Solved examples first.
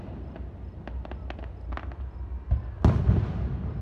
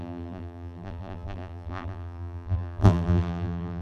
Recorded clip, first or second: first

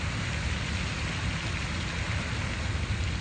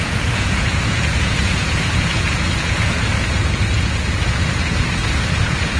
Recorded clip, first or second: first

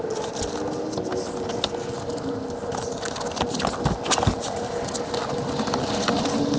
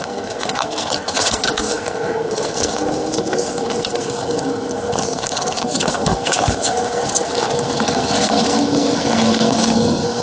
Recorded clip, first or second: first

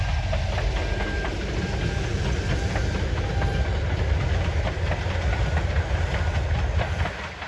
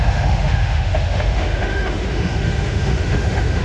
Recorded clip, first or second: first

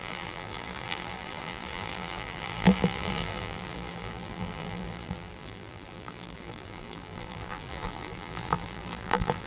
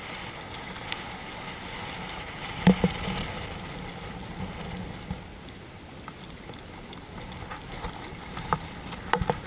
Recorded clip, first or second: second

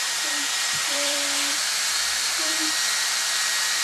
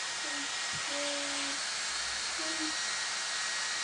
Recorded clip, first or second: second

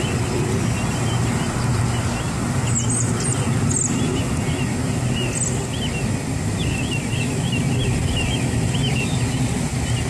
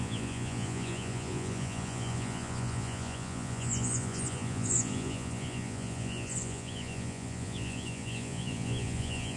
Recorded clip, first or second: first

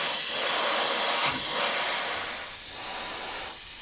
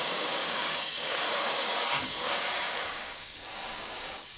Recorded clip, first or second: first